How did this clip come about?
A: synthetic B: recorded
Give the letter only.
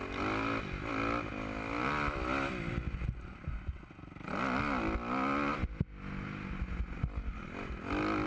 B